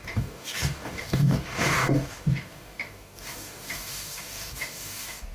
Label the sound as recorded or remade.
remade